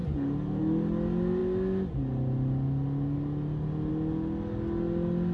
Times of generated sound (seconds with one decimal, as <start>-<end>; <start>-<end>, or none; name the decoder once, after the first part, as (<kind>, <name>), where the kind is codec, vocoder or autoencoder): none